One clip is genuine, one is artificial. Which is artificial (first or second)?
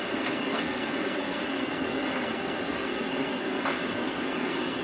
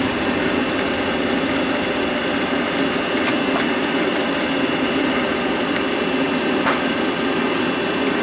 first